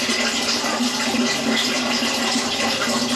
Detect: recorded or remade recorded